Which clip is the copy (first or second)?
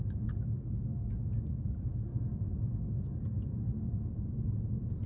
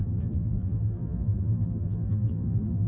second